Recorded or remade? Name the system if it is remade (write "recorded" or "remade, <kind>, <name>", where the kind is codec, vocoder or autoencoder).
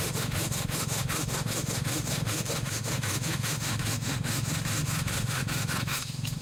remade, autoencoder, DAC-VAE